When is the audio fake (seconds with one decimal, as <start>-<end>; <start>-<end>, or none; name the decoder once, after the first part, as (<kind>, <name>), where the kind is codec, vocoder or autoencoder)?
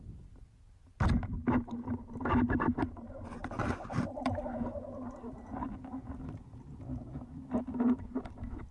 none